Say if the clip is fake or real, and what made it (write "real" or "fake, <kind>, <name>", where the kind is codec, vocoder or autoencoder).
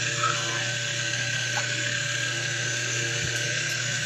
fake, codec, SNAC